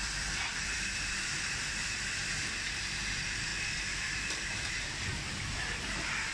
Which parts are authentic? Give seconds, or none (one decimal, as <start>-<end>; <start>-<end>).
1.8-2.3